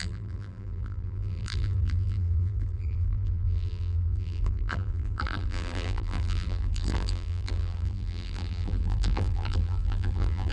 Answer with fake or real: fake